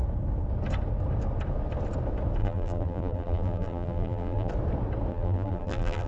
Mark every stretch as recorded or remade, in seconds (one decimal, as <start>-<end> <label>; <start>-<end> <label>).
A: 0.0-2.4 recorded; 2.4-4.5 remade; 4.5-5.1 recorded; 5.1-6.1 remade